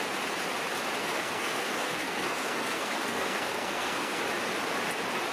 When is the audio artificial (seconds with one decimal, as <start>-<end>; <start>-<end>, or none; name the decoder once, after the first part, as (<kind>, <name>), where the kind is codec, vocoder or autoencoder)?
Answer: 1.0-4.2 (codec, SNAC)